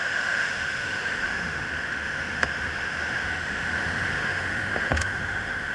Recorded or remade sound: remade